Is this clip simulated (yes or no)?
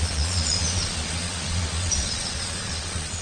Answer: yes